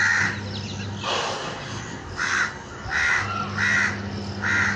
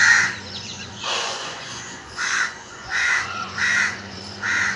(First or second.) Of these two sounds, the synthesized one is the second